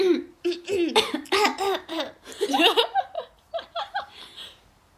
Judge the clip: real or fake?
fake